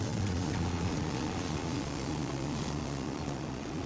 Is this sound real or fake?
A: fake